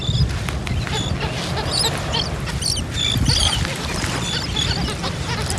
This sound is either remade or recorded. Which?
recorded